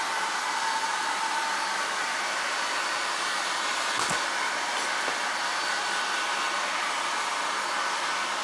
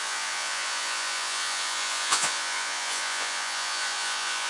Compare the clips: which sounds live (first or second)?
first